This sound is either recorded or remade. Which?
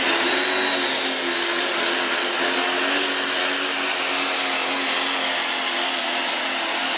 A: recorded